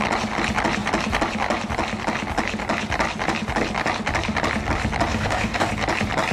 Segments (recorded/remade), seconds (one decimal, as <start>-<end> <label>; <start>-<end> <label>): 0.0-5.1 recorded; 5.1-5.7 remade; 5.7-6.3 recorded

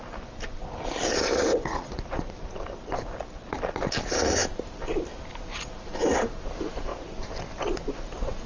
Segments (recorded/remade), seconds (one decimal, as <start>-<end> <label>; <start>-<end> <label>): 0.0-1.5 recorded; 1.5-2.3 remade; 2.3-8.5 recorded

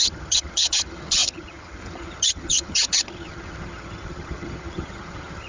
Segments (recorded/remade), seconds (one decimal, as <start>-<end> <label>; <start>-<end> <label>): 0.0-5.5 remade

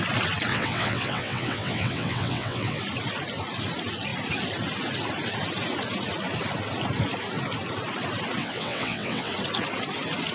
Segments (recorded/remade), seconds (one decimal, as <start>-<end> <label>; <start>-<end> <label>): 0.0-0.5 recorded; 0.5-2.8 remade; 2.8-8.4 recorded; 8.4-9.3 remade; 9.3-10.3 recorded